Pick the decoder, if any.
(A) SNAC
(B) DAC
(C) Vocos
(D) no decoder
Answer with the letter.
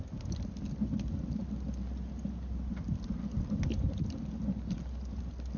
D